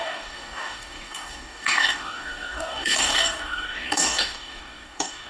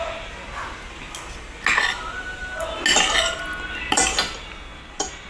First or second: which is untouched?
second